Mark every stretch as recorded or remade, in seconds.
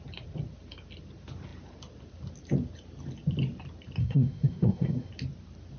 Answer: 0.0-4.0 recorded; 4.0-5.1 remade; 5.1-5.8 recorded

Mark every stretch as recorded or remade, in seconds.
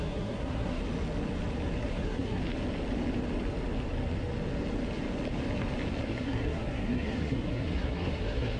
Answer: 0.0-0.8 remade; 0.8-1.8 recorded; 1.8-2.4 remade; 2.4-6.0 recorded; 6.0-8.6 remade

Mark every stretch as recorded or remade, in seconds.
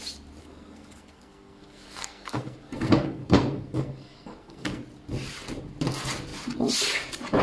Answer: 0.0-0.4 recorded; 0.4-4.8 remade; 4.8-7.4 recorded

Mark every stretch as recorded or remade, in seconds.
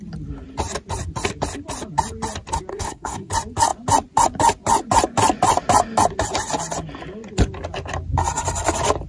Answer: 0.0-2.7 recorded; 2.7-3.3 remade; 3.3-9.1 recorded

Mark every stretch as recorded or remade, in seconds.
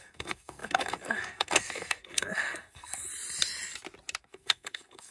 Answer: 0.0-3.1 remade; 3.1-4.2 recorded; 4.2-5.1 remade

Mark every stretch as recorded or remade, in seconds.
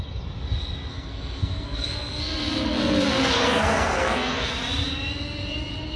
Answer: 0.0-0.9 recorded; 0.9-4.5 remade; 4.5-6.0 recorded